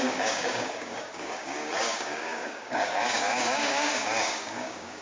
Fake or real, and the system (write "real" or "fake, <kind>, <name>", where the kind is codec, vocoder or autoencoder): fake, codec, DAC